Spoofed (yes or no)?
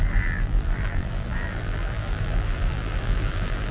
yes